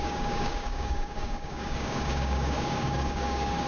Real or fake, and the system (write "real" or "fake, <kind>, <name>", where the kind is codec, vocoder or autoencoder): fake, codec, DAC